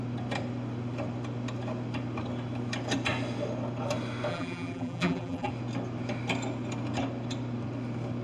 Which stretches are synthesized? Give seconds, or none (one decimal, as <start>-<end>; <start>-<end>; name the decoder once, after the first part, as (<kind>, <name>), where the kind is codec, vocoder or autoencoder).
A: 4.3-5.5 (vocoder, BigVGAN v2)